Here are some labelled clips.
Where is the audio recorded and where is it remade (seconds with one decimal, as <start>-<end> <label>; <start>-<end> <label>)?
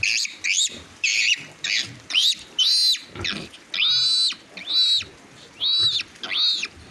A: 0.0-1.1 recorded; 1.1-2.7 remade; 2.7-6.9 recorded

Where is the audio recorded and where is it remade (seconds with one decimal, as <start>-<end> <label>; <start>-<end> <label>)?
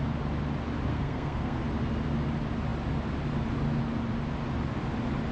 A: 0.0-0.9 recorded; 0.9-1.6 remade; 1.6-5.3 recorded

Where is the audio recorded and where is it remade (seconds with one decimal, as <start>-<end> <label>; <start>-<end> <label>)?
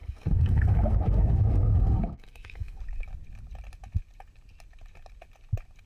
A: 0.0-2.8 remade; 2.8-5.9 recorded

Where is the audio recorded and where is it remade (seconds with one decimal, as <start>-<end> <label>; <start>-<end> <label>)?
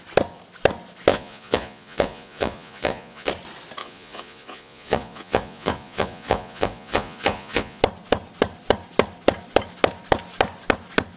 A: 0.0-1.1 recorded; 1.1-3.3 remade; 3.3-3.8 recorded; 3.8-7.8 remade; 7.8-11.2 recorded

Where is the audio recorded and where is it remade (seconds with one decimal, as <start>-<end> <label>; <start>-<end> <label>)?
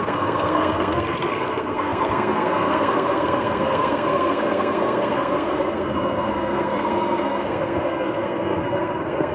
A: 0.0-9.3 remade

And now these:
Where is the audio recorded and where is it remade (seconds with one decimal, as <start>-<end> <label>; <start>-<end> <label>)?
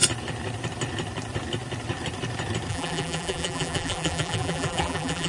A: 0.0-2.7 recorded; 2.7-5.3 remade